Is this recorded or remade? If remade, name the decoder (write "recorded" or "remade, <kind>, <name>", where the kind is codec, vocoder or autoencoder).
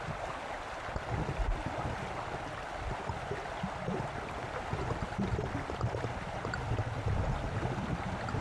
recorded